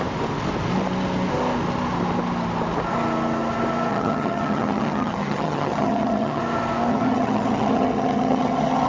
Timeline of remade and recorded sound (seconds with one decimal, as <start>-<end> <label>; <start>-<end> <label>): 0.0-3.9 recorded; 3.9-6.4 remade; 6.4-6.9 recorded; 6.9-8.9 remade